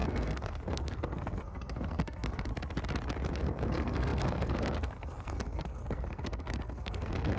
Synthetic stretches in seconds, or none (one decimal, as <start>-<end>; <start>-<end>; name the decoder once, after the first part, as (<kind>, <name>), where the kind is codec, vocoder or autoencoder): 0.0-2.5 (codec, SNAC); 3.3-7.4